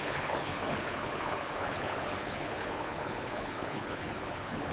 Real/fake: fake